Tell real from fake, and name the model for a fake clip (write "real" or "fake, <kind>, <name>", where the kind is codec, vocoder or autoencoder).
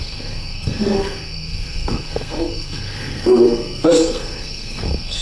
fake, codec, SNAC